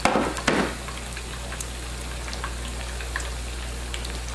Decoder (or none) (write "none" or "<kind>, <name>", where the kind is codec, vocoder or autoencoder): none